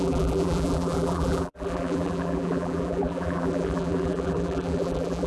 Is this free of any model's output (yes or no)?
no